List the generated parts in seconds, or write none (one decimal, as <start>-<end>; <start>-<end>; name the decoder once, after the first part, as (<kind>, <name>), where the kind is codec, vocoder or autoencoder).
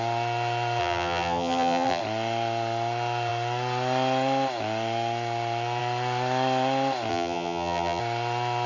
0.8-2.0 (vocoder, BigVGAN v2); 7.1-8.0